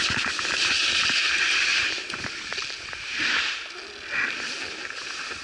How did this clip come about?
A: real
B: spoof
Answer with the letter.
A